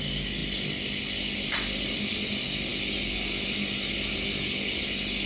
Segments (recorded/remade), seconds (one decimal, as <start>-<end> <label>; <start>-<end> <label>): 0.0-5.3 recorded